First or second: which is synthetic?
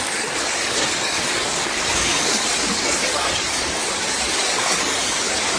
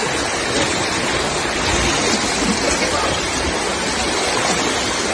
first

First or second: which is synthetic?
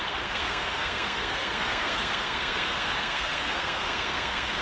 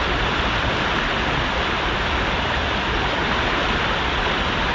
first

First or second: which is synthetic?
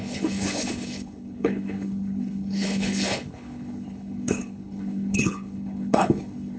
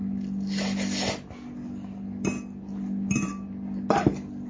first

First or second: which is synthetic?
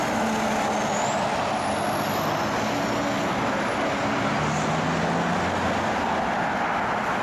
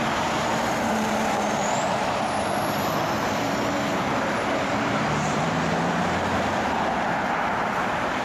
second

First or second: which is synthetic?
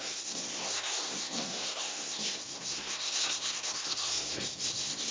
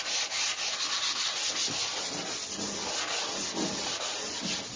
first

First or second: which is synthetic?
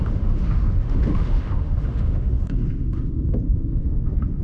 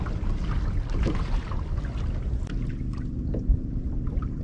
first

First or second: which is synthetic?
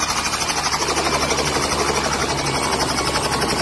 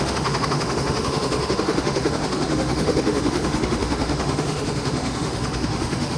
second